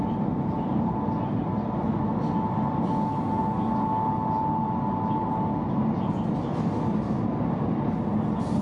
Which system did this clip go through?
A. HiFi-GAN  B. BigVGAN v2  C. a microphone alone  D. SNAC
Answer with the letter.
C